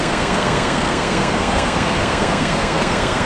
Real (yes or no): no